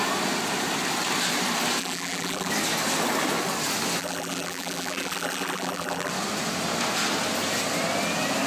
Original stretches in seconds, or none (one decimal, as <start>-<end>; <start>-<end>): 0.0-1.8; 2.5-4.0; 6.1-8.5